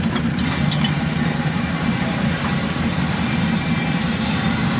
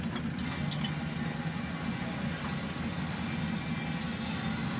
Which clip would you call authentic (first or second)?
second